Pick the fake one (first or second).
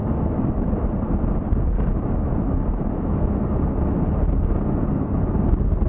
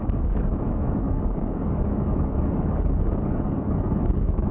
second